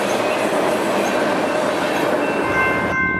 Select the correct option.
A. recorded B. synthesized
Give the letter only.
A